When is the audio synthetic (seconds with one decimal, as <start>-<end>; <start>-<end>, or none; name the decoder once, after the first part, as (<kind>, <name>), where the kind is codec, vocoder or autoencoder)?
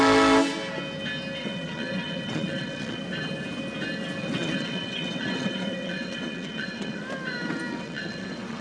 1.4-3.0 (vocoder, WaveNeXt); 4.2-7.0; 7.7-8.6